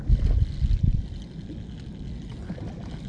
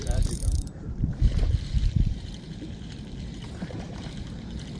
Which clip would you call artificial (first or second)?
second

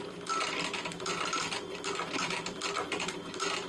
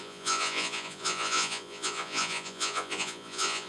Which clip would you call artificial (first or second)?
second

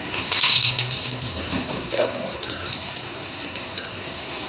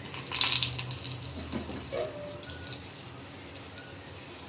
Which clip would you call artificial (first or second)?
first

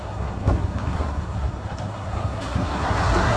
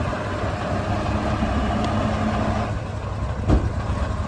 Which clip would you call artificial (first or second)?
first